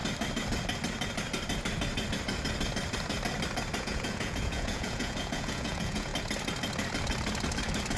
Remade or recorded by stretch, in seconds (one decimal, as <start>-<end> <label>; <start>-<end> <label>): 0.0-3.8 recorded; 3.8-6.1 remade; 6.1-8.0 recorded